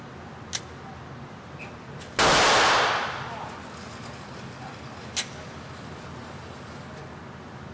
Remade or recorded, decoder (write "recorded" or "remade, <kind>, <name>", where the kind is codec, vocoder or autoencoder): recorded